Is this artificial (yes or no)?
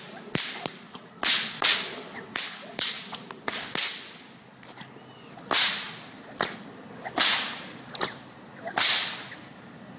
no